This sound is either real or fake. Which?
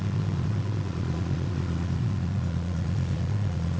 fake